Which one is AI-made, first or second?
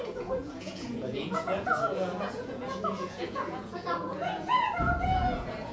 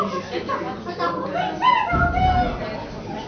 first